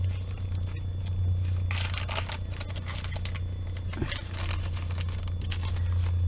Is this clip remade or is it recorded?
recorded